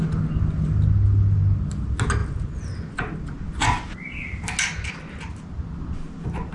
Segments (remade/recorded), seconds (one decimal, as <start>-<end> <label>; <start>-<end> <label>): 0.0-6.5 recorded